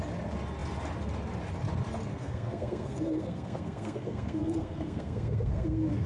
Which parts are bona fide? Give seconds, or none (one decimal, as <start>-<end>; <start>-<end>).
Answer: 0.0-2.1